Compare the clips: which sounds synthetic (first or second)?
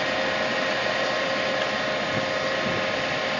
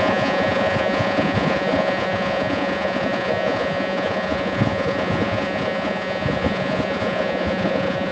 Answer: second